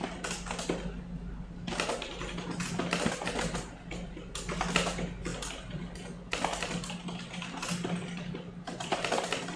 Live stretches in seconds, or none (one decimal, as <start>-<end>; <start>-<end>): 0.0-9.6